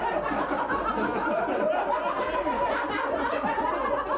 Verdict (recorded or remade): recorded